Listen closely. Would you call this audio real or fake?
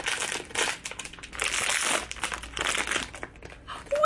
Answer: real